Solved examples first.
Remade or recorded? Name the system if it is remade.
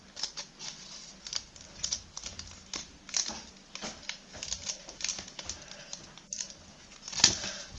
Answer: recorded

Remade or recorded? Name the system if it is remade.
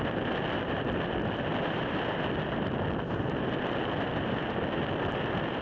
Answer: recorded